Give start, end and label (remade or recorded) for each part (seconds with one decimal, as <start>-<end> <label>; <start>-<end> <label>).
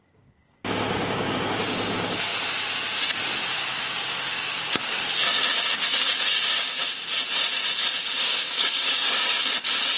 0.0-2.3 remade; 2.3-3.5 recorded; 3.5-6.8 remade; 6.8-8.0 recorded; 8.0-10.0 remade